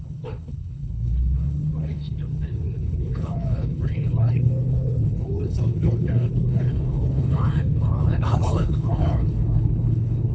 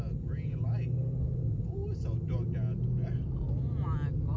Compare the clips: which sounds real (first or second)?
second